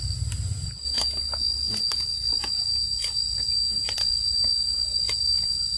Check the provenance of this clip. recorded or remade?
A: recorded